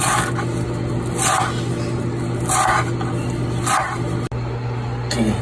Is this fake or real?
real